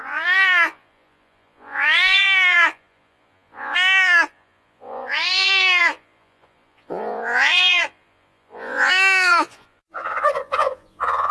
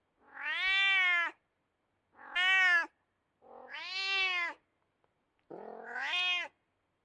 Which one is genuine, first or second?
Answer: second